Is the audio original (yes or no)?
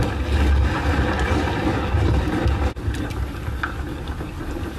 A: yes